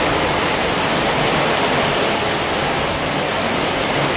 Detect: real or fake real